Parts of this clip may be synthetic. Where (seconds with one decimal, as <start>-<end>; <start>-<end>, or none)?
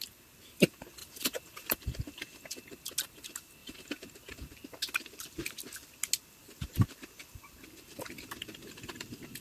none